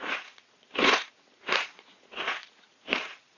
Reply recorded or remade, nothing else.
remade